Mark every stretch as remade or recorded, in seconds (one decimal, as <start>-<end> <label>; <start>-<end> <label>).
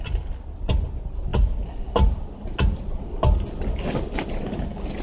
0.0-5.0 recorded